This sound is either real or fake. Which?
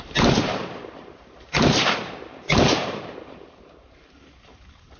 fake